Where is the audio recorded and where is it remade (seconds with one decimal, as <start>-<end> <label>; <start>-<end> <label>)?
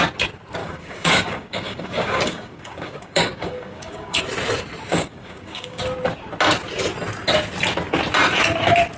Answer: 0.0-0.6 recorded; 0.6-4.2 remade; 4.2-4.9 recorded; 4.9-5.8 remade; 5.8-9.0 recorded